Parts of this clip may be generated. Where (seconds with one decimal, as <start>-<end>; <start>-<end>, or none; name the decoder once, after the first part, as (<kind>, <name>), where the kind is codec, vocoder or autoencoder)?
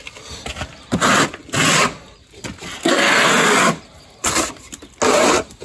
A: 2.8-3.3 (codec, SNAC)